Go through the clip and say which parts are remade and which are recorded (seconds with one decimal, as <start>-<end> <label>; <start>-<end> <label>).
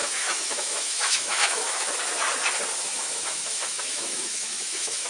0.0-1.9 remade; 1.9-2.9 recorded; 2.9-5.1 remade